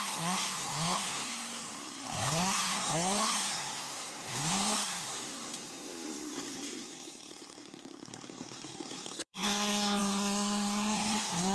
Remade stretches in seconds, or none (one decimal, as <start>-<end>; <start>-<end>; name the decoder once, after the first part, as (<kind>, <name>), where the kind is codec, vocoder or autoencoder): 0.0-11.5 (codec, SNAC)